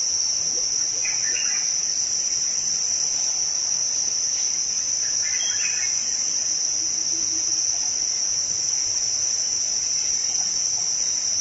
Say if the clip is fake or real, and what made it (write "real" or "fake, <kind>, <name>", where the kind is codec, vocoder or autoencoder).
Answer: real